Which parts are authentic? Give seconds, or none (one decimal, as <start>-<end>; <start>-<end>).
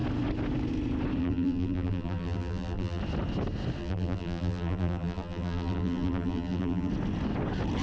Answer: 0.0-1.2; 3.0-3.8; 6.9-7.8